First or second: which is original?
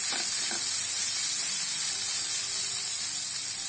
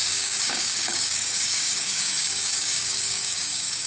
first